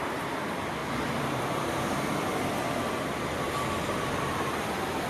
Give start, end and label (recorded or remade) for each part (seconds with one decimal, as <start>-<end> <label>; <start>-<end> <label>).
0.0-5.1 remade